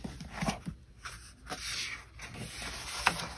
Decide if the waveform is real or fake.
real